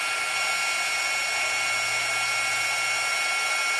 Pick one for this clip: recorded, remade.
recorded